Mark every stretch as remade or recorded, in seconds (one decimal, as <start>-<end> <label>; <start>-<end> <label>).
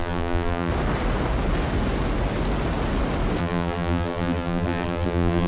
0.0-0.7 remade; 0.7-3.4 recorded; 3.4-5.5 remade